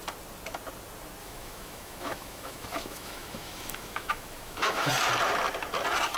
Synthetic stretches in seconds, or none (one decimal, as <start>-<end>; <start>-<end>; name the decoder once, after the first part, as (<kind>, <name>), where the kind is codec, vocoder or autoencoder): 1.2-4.9 (autoencoder, DAC-VAE)